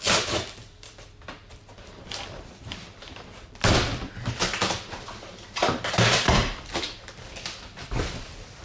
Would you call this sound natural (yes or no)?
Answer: no